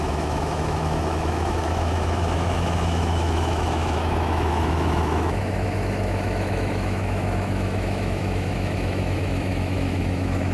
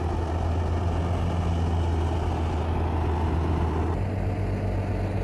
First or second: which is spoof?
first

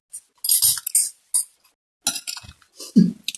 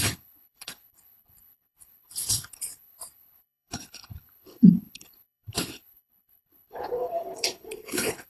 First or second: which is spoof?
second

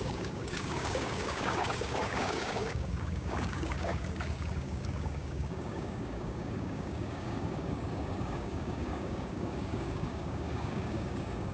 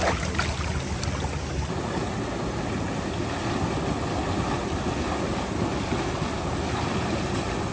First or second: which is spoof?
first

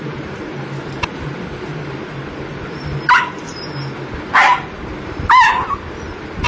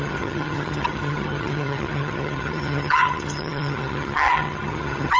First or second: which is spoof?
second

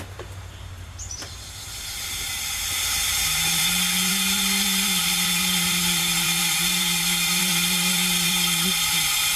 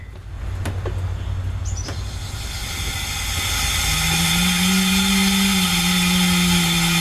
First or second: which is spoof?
first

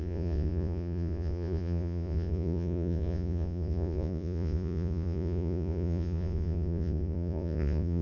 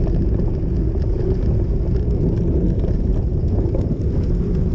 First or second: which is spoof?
first